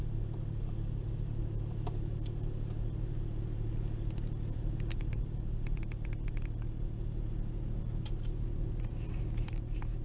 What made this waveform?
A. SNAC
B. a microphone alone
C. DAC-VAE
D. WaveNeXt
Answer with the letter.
B